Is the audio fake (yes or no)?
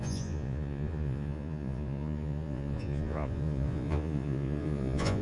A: yes